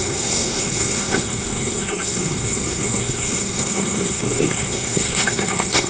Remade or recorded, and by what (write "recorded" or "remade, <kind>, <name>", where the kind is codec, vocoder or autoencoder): remade, codec, SNAC